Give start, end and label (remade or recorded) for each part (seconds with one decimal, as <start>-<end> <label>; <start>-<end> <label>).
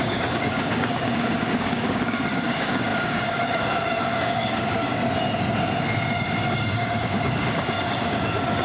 0.0-5.0 remade; 5.0-6.1 recorded; 6.1-8.6 remade